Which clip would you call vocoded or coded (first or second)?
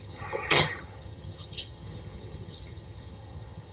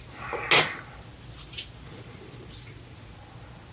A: first